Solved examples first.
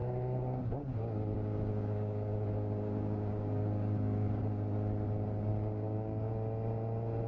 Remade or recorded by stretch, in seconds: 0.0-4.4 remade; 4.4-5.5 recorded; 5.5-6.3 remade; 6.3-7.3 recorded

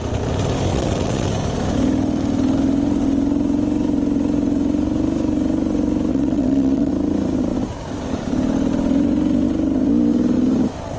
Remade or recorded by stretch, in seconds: 0.0-0.7 recorded; 0.7-1.3 remade; 1.3-6.1 recorded; 6.1-6.9 remade; 6.9-11.0 recorded